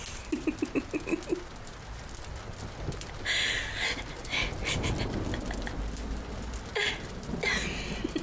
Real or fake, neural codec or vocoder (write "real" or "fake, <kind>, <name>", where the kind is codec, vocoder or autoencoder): real